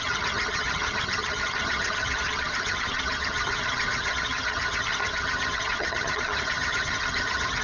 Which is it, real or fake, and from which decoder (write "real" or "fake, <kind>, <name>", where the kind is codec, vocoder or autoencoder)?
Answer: fake, vocoder, HiFi-GAN